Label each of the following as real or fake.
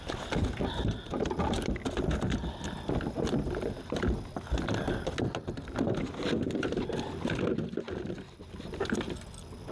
real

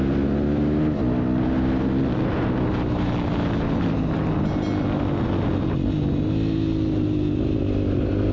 real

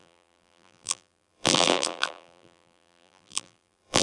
fake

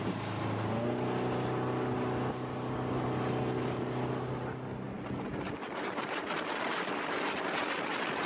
real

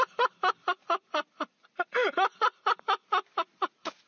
real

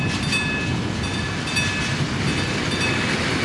real